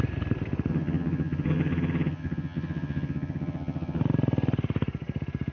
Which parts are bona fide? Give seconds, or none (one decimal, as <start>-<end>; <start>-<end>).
0.0-0.7; 4.0-5.5